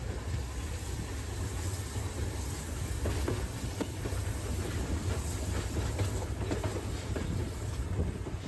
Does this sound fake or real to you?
real